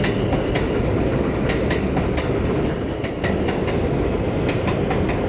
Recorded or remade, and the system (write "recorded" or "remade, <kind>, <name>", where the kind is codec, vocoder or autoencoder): recorded